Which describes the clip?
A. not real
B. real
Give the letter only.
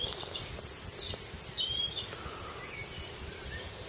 B